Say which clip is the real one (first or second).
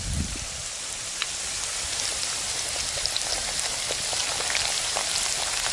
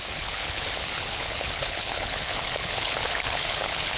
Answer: first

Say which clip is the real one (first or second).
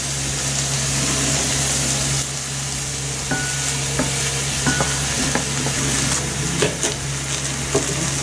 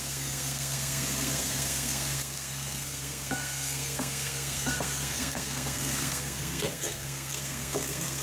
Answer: first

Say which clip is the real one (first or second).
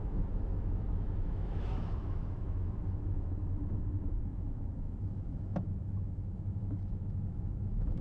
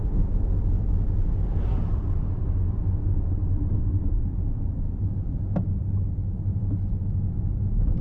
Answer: second